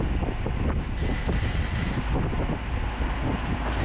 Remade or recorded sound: recorded